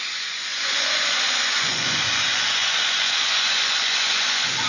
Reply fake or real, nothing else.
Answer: fake